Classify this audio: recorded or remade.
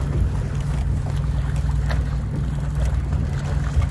recorded